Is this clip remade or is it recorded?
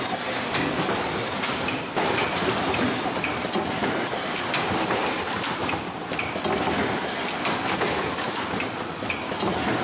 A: recorded